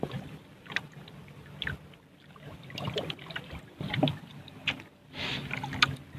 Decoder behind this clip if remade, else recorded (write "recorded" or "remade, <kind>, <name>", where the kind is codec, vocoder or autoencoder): recorded